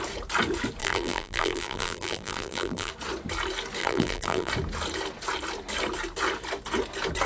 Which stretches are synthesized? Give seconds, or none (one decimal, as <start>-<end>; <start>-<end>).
0.8-2.9; 3.8-4.5